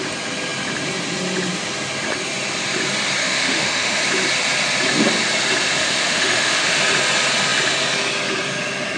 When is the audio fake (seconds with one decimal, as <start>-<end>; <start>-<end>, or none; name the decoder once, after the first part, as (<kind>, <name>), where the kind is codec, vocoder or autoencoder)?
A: 3.2-4.0 (autoencoder, DAC-VAE); 5.8-6.8